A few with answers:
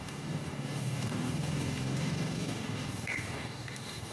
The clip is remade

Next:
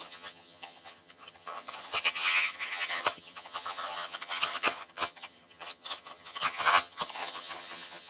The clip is remade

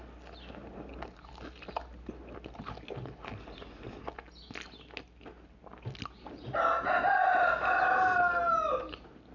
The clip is recorded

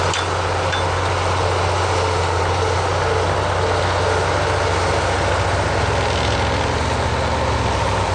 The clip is recorded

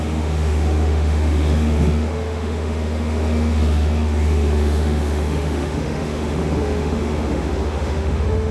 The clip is remade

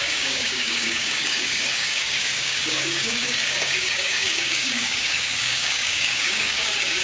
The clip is remade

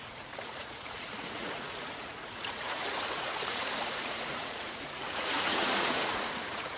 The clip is remade